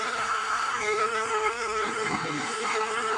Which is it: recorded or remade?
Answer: remade